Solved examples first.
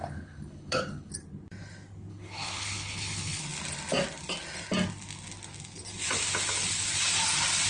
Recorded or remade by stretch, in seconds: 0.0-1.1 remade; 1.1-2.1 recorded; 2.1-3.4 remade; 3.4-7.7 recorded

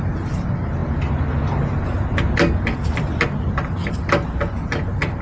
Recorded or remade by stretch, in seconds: 0.0-5.2 recorded

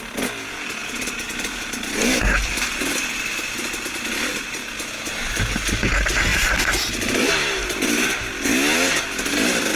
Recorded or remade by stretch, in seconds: 0.0-9.8 recorded

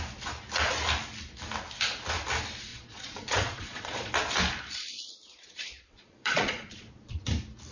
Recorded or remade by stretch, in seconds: 0.0-2.7 recorded; 2.7-4.1 remade; 4.1-5.3 recorded; 5.3-7.2 remade; 7.2-7.7 recorded

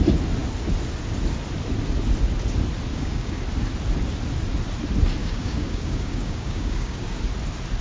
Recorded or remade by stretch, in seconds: 0.0-2.9 recorded; 2.9-3.4 remade; 3.4-5.2 recorded; 5.2-7.2 remade; 7.2-7.8 recorded

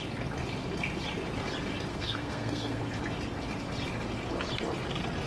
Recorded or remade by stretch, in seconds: 0.0-1.9 recorded; 1.9-2.8 remade; 2.8-5.3 recorded

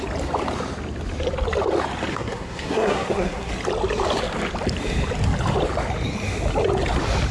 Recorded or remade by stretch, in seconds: 0.0-2.1 recorded; 2.1-3.5 remade; 3.5-7.3 recorded

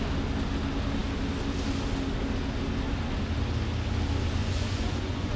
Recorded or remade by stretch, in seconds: 0.0-4.4 recorded; 4.4-5.4 remade